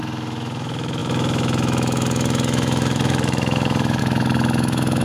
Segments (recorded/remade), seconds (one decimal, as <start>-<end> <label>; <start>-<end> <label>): 0.0-5.0 remade